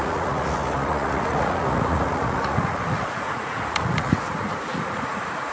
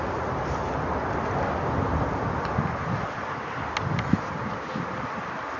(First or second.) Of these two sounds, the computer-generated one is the first